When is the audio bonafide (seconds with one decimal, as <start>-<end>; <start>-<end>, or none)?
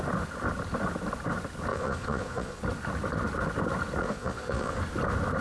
0.0-1.7; 2.6-4.0; 4.8-5.4